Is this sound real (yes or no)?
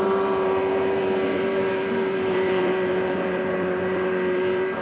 no